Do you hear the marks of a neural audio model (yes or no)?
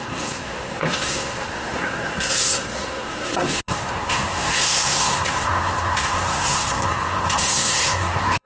yes